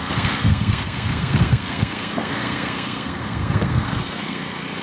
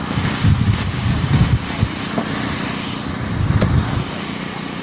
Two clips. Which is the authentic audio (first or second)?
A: second